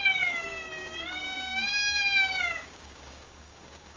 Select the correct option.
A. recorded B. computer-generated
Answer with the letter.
B